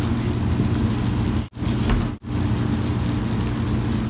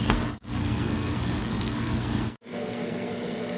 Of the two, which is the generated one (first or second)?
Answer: second